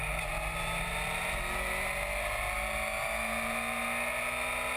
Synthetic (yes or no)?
no